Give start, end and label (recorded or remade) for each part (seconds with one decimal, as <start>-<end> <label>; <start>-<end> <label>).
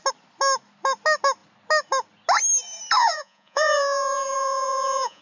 0.0-3.0 recorded; 3.0-5.2 remade